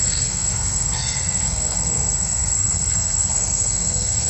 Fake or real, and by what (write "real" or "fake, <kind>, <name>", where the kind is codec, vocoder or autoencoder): fake, codec, SNAC